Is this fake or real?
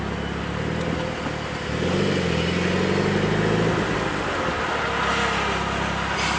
real